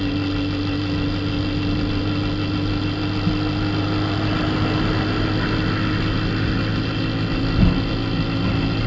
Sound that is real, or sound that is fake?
real